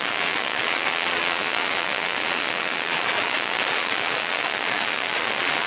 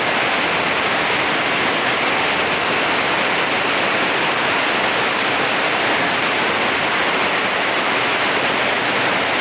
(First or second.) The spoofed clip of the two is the first